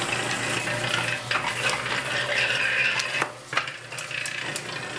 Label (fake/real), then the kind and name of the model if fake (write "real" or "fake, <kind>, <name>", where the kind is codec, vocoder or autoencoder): real